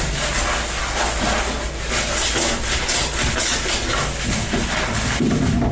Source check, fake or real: real